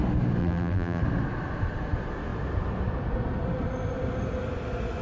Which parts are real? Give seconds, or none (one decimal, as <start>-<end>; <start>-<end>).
0.0-0.4; 1.0-5.0

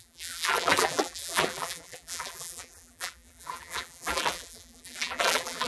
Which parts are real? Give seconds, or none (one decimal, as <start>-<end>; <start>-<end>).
none

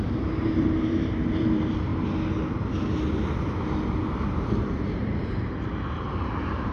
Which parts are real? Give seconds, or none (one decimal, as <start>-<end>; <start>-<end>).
1.9-4.1

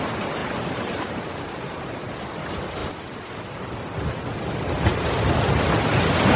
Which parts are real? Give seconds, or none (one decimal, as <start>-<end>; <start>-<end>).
0.0-0.4; 2.1-6.4

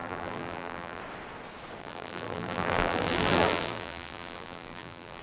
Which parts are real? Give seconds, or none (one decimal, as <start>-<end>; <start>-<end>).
1.0-1.8